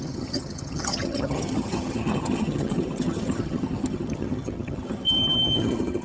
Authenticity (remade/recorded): remade